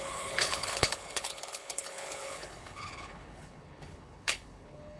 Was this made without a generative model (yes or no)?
no